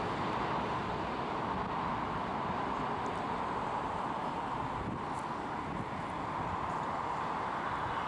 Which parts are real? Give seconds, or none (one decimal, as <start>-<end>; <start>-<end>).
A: 0.0-8.1